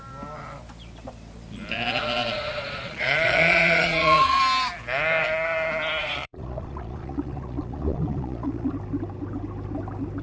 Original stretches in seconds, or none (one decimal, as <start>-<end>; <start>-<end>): 0.0-2.2; 4.4-6.0; 8.7-10.2